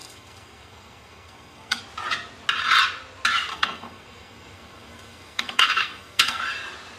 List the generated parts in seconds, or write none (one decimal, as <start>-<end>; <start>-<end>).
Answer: 0.0-1.8; 3.5-6.4